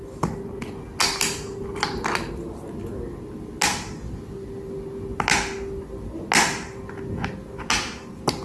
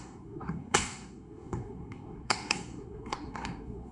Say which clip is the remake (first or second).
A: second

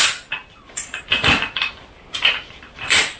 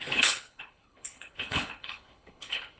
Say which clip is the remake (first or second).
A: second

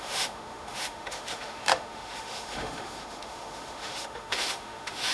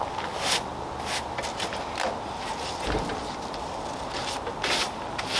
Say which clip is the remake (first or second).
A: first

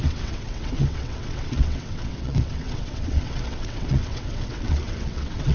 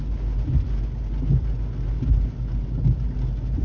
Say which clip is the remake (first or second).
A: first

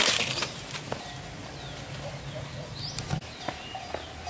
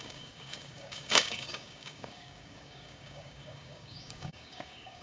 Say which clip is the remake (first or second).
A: second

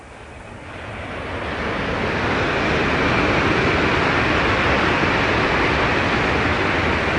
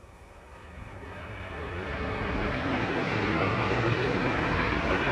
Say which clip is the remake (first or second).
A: second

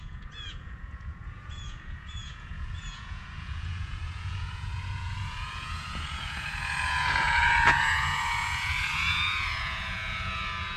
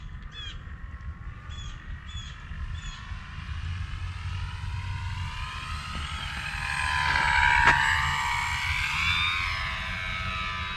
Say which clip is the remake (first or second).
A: first